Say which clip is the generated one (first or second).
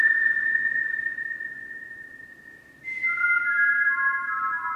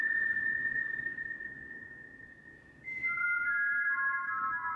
second